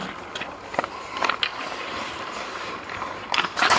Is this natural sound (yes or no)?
yes